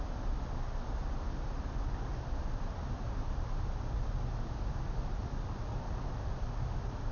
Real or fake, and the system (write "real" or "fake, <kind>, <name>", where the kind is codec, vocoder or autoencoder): real